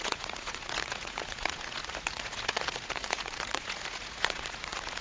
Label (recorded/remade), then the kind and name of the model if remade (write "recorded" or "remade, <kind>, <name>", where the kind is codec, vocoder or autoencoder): remade, vocoder, Vocos